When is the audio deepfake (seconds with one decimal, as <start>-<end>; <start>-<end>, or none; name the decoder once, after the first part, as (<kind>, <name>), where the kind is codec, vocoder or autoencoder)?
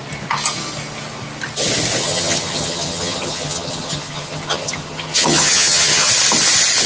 2.0-6.1 (vocoder, HiFi-GAN)